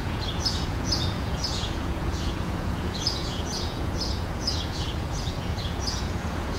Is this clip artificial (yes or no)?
yes